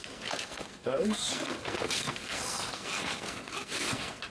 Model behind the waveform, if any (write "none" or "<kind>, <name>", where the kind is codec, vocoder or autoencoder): codec, SNAC